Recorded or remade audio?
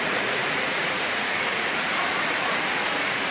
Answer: remade